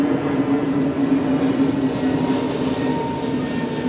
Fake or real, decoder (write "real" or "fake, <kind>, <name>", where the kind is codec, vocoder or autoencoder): real